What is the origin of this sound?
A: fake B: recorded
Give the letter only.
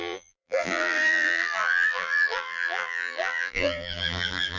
A